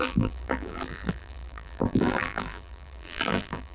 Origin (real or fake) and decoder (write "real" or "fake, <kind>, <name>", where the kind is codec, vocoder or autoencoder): fake, vocoder, BigVGAN v2